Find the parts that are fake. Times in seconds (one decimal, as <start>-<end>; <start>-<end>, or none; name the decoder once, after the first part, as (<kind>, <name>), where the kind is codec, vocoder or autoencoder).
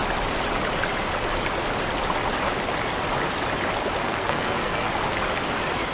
4.0-4.9 (codec, SNAC)